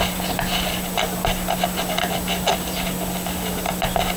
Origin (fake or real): real